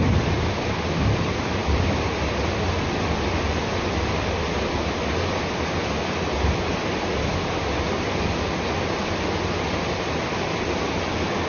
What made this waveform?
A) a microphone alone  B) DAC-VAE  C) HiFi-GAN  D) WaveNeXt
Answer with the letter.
A